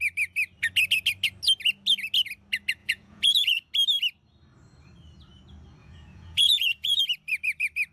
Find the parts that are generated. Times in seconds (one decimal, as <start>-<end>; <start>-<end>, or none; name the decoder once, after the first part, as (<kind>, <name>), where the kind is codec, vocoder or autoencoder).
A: 2.8-3.7 (vocoder, Vocos); 5.8-7.0